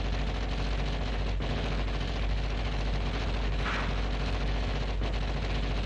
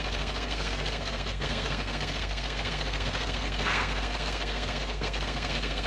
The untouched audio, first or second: first